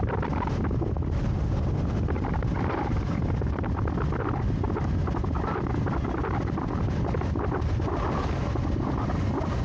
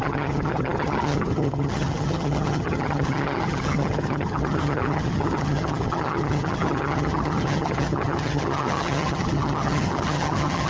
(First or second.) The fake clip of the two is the second